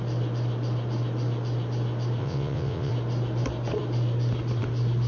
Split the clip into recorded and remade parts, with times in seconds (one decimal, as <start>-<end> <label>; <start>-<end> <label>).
0.0-2.2 recorded; 2.2-2.9 remade; 2.9-5.1 recorded